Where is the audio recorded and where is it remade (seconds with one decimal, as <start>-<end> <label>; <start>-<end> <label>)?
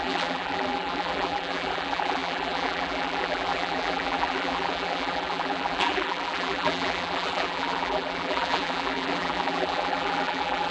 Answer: 0.0-10.7 remade